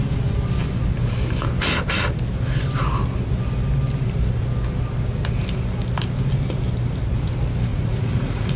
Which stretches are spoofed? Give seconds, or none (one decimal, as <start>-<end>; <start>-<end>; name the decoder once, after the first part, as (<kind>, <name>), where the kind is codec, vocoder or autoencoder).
7.7-8.6 (vocoder, Vocos)